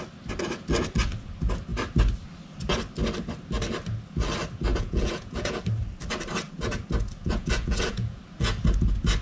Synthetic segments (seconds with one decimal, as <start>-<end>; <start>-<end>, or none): 4.7-5.6; 7.2-8.2